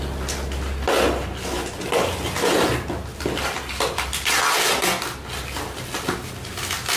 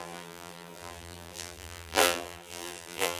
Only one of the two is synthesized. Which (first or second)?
second